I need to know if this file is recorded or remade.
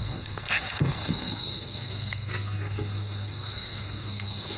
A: remade